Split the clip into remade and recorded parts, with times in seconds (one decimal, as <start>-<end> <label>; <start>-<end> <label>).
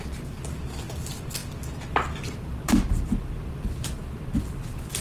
0.0-5.0 recorded